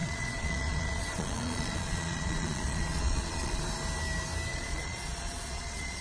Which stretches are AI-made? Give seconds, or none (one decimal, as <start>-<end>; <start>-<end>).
0.0-3.6; 4.5-6.0